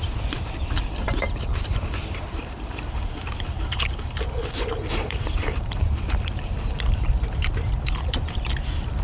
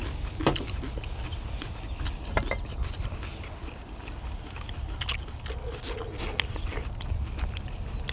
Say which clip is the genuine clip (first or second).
second